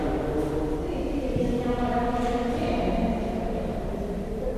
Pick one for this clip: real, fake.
real